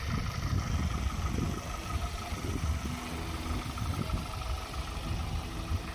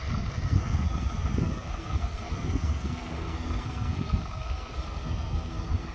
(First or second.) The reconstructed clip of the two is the second